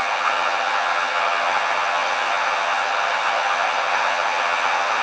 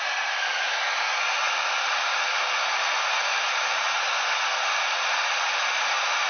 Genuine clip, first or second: second